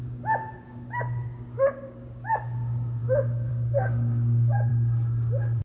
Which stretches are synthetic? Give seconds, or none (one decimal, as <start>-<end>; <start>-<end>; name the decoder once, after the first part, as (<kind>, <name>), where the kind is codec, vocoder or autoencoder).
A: 0.0-3.0 (codec, DAC); 3.5-4.7